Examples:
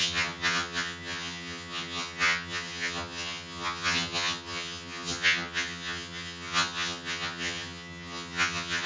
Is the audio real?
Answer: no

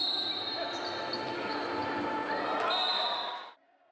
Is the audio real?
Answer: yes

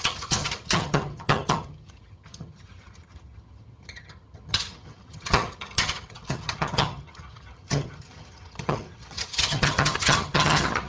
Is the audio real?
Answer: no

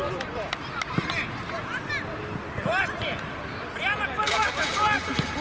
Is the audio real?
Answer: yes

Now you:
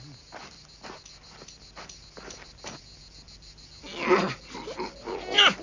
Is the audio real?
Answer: yes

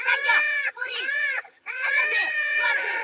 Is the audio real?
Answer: no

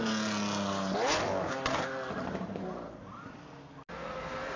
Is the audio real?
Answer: yes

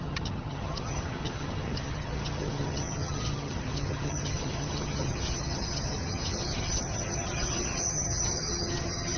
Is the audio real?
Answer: no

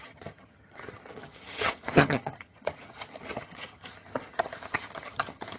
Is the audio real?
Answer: no